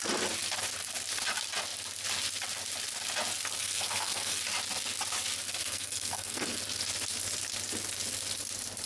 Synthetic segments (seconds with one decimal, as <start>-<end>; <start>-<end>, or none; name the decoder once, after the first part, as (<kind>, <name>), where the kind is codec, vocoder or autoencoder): 3.6-4.4 (codec, SNAC); 5.6-6.6